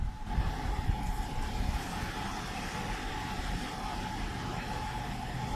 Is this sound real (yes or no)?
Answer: yes